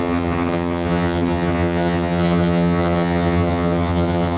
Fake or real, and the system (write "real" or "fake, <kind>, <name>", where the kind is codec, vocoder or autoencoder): fake, vocoder, HiFi-GAN